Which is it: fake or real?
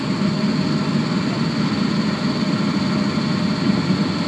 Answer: real